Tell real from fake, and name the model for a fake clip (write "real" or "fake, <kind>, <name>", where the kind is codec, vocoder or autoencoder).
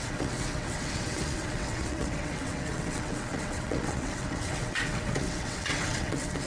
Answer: fake, vocoder, WaveNeXt